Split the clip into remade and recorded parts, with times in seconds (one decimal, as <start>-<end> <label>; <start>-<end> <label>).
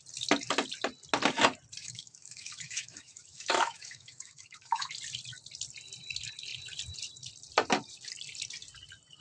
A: 0.0-1.8 recorded; 1.8-4.9 remade; 4.9-9.2 recorded